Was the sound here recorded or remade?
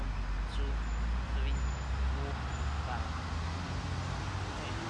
recorded